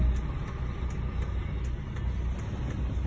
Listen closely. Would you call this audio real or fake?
real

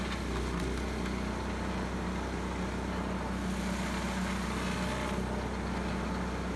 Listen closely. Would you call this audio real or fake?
real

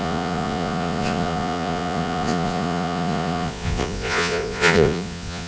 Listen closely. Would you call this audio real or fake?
fake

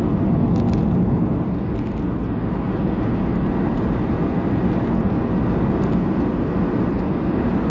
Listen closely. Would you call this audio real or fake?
real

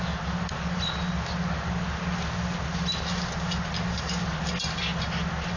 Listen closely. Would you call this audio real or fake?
real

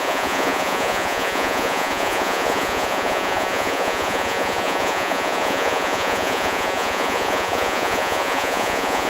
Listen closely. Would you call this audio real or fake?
fake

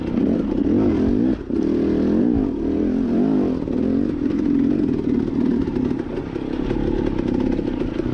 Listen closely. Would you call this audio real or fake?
real